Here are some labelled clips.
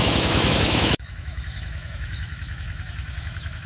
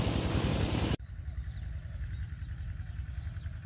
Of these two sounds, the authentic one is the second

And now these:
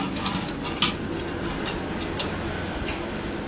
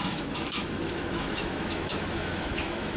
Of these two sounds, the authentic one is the first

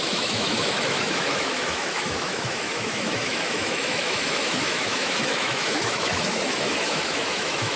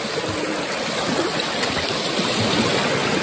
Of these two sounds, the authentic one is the second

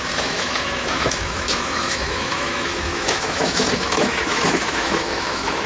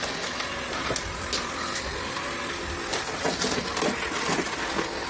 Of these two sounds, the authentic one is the second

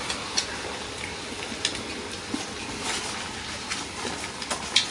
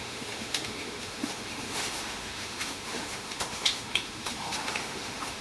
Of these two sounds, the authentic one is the first